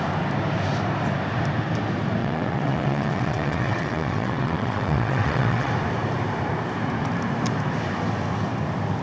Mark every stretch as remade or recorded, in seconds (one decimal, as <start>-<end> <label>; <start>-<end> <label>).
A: 0.0-2.2 recorded; 2.2-5.7 remade; 5.7-9.0 recorded